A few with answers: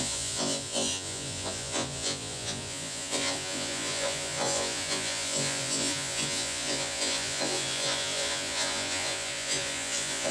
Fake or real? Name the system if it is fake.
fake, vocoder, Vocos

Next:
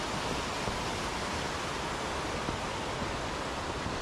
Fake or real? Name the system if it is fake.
real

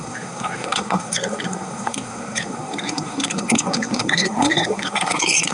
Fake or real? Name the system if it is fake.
fake, codec, SNAC